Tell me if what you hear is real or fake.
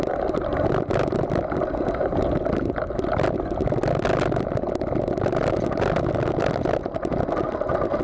real